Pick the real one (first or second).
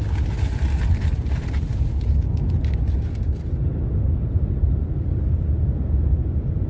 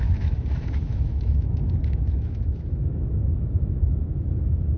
first